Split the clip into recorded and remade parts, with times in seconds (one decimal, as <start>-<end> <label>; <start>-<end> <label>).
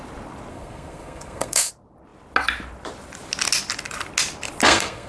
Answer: 0.0-0.5 recorded; 0.5-1.7 remade; 1.7-4.6 recorded; 4.6-5.1 remade